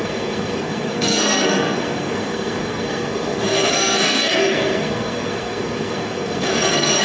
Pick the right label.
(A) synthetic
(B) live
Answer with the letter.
A